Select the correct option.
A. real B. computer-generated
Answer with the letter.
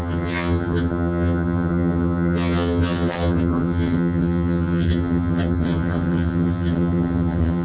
B